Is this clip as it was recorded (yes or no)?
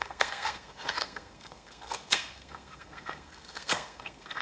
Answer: no